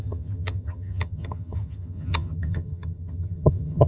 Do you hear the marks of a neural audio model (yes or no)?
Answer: yes